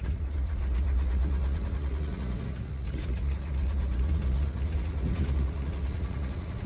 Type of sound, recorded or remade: remade